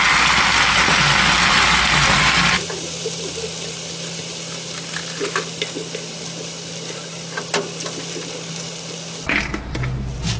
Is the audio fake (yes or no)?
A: no